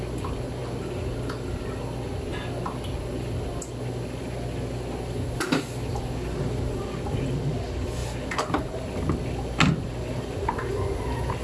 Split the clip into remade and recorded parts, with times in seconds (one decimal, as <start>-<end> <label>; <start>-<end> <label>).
0.0-11.4 recorded